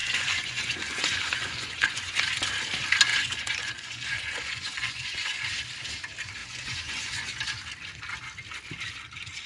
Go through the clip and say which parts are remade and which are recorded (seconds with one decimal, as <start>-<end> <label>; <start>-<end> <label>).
0.0-2.2 remade; 2.2-3.1 recorded; 3.1-5.6 remade; 5.6-6.4 recorded; 6.4-7.4 remade; 7.4-9.5 recorded